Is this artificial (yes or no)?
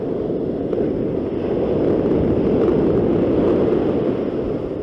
no